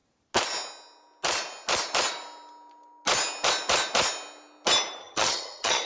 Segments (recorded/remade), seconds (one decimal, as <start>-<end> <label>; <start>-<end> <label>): 0.0-5.0 recorded; 5.0-5.9 remade